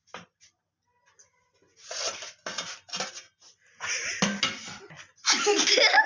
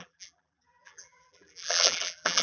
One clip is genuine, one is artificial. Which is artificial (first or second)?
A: second